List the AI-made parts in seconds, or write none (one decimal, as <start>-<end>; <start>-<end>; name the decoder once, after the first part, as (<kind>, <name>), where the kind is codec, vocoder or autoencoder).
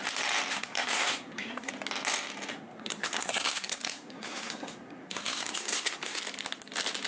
0.5-1.7 (codec, SNAC); 2.5-6.2